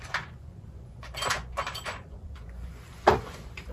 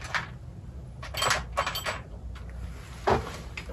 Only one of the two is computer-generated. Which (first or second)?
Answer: first